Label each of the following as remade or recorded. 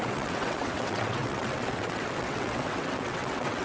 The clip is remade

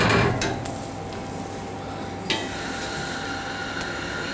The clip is recorded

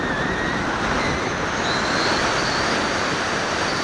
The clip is recorded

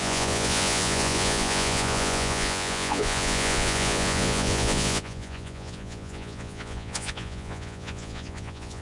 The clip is remade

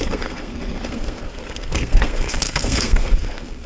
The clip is remade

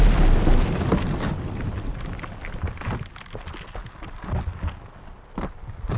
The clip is recorded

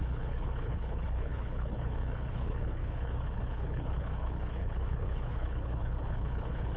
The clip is remade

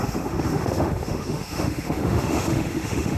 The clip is remade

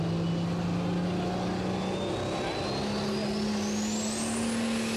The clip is recorded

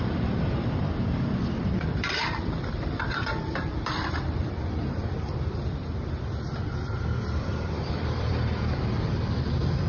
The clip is remade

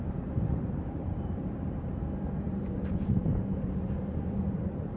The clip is remade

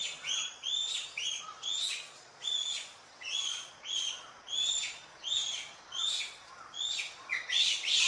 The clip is remade